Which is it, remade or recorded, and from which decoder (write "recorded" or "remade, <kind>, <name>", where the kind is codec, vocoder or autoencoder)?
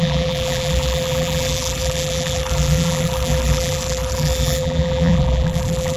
remade, vocoder, BigVGAN v2